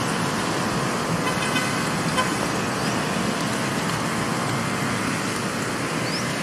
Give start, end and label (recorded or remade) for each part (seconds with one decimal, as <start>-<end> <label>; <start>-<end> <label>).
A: 0.0-6.4 recorded